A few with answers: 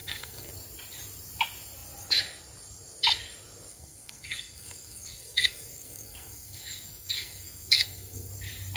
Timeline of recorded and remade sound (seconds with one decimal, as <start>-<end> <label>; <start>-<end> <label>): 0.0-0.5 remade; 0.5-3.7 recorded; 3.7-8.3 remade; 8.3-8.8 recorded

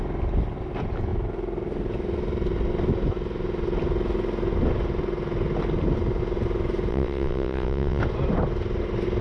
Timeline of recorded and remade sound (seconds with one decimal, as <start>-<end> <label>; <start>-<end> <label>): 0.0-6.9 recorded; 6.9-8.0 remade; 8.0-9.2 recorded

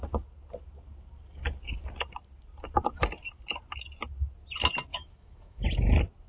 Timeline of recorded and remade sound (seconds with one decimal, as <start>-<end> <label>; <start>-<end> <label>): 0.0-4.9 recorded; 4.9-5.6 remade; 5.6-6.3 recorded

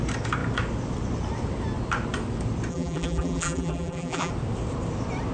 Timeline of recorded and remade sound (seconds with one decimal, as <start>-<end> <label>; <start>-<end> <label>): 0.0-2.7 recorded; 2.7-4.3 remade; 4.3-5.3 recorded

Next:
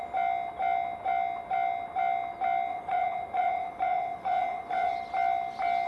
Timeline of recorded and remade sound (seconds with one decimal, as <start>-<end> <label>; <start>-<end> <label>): 0.0-2.7 recorded; 2.7-4.9 remade; 4.9-5.9 recorded

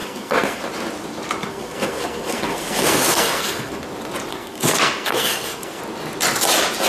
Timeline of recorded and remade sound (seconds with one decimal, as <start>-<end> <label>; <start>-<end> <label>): 0.0-0.6 remade; 0.6-1.5 recorded; 1.5-3.8 remade; 3.8-4.3 recorded; 4.3-5.8 remade; 5.8-6.9 recorded

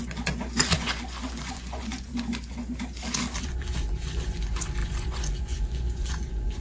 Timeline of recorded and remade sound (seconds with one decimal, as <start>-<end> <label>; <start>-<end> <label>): 0.0-2.1 remade; 2.1-3.4 recorded; 3.4-6.6 remade